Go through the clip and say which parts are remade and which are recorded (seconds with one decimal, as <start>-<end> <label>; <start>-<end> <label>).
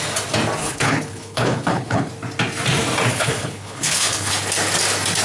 0.0-0.6 recorded; 0.6-2.1 remade; 2.1-3.1 recorded; 3.1-4.3 remade; 4.3-5.2 recorded